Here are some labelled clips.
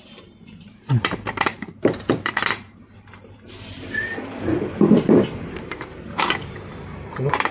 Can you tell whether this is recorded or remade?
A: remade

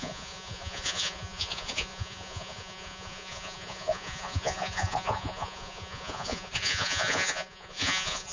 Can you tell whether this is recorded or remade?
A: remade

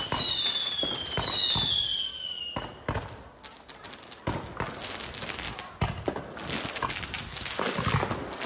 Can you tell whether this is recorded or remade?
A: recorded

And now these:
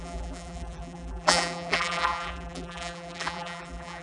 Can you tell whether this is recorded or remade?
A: remade